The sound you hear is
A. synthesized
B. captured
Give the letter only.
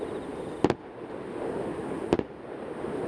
B